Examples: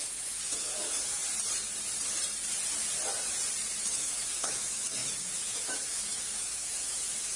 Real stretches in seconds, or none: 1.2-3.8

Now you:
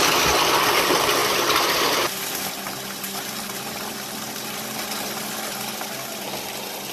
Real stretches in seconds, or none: 0.0-6.9

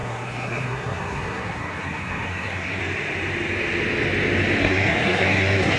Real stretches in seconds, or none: 2.8-4.6

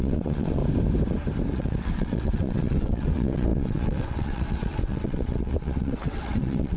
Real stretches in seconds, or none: 0.6-1.5